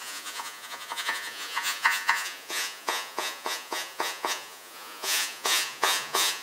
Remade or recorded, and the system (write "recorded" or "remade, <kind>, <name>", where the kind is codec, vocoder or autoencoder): remade, vocoder, Vocos